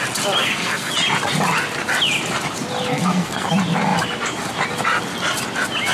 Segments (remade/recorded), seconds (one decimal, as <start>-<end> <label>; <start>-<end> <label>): 0.0-0.4 recorded; 0.4-0.9 remade; 0.9-2.9 recorded; 2.9-3.5 remade; 3.5-5.9 recorded